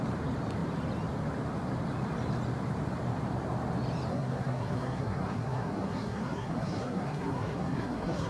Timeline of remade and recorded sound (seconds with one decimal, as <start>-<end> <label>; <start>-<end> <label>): 0.0-4.1 recorded; 4.1-8.3 remade